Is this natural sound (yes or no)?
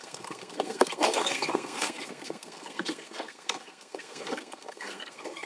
no